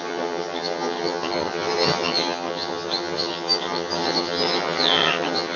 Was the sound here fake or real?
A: fake